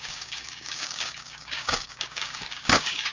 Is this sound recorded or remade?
remade